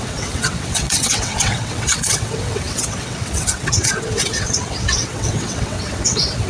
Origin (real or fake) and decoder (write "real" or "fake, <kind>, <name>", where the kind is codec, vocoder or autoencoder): fake, vocoder, WaveNeXt